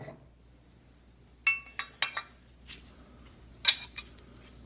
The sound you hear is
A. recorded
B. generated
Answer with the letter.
A